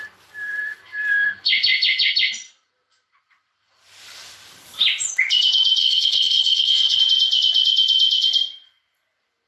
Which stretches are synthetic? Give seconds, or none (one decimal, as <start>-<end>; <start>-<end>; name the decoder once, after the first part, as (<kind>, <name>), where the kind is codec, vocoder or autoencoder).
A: 5.8-7.0 (codec, SNAC)